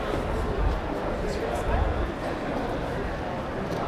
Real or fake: real